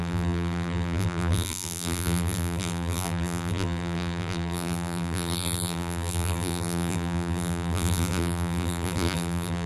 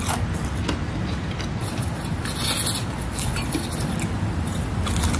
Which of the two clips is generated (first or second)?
first